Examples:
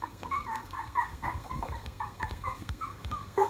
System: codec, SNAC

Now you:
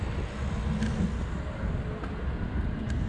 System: none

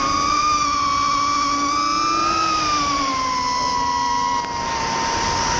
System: none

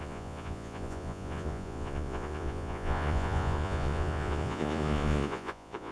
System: vocoder, Vocos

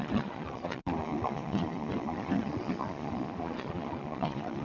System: vocoder, Vocos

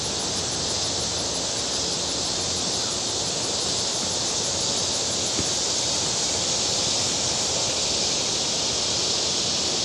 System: none